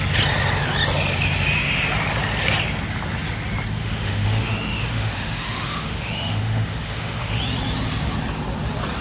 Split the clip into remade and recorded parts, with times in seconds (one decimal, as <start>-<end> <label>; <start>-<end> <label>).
0.0-3.8 recorded; 3.8-7.4 remade; 7.4-9.0 recorded